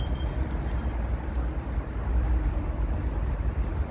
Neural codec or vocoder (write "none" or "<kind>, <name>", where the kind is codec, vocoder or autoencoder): none